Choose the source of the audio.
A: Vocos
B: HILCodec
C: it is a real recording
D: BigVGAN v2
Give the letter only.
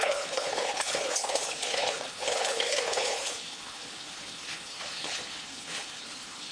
B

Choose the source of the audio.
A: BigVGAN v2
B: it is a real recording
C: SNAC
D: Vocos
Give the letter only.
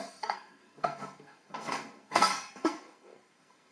C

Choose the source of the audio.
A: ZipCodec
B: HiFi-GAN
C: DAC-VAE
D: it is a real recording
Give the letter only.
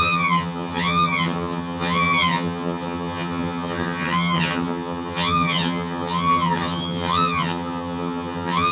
B